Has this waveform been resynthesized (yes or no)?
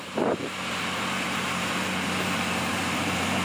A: yes